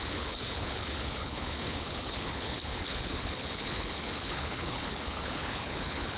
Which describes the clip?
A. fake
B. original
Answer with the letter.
A